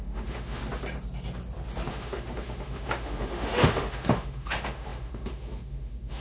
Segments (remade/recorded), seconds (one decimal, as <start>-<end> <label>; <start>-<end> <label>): 0.0-0.6 remade; 0.6-1.9 recorded; 1.9-6.2 remade